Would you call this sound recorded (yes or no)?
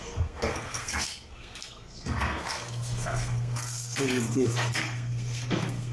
no